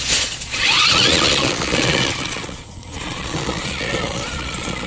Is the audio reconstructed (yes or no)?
yes